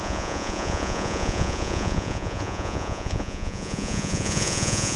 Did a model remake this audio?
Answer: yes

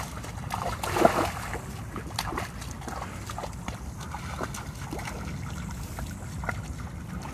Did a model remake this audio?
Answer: no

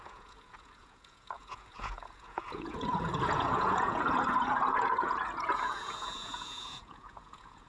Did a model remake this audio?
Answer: yes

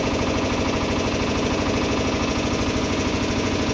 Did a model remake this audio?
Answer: yes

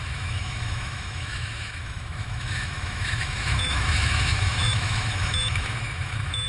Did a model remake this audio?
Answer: yes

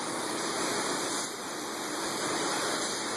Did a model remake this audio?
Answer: no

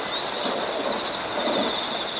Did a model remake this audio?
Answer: no